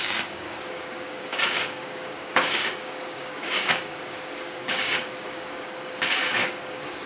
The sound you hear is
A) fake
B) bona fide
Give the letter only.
A